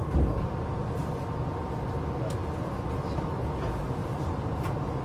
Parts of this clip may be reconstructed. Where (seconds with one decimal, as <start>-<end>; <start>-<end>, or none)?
4.0-5.0

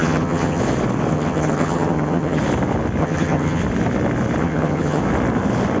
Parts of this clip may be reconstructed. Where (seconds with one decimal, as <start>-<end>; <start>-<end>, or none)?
0.0-0.6; 1.1-2.4; 3.0-3.6; 4.4-5.0

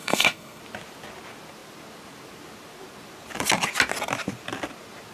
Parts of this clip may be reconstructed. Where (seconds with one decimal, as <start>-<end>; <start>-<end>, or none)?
0.0-0.6